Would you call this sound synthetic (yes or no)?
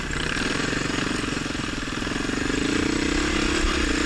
no